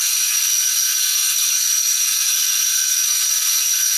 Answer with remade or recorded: remade